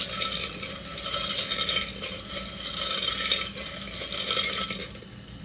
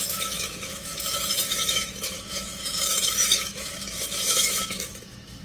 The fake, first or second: second